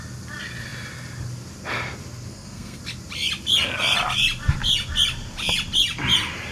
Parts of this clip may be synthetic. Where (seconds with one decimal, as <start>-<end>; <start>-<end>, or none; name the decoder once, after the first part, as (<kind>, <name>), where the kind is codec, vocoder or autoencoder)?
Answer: 2.3-2.8 (codec, SNAC)

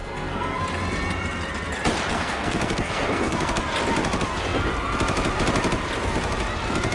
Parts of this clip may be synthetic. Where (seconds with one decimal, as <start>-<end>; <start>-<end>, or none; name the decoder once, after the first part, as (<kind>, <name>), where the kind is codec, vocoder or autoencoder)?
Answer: 0.0-0.6 (codec, SNAC); 2.1-3.6

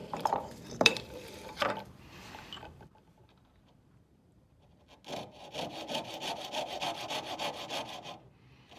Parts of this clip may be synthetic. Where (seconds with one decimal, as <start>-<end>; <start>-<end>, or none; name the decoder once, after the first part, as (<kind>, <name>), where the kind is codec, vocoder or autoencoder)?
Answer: 0.0-4.8 (vocoder, BigVGAN v2)